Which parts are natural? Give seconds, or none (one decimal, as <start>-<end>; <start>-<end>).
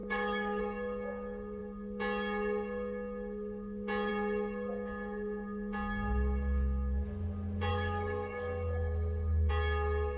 0.6-7.7; 9.5-10.2